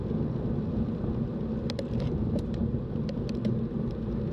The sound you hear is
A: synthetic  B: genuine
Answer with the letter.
B